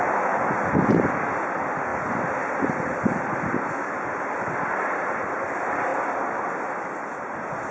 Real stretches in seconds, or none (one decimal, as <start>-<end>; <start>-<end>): 0.0-7.7